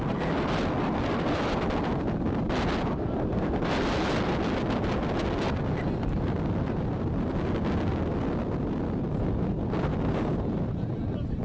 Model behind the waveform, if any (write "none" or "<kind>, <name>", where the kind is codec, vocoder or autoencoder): none